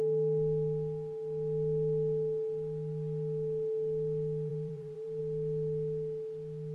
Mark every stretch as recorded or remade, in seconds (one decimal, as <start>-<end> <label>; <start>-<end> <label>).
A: 0.0-4.5 recorded; 4.5-5.2 remade; 5.2-6.7 recorded